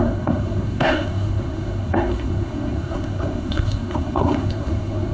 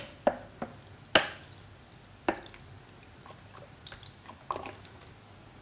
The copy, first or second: first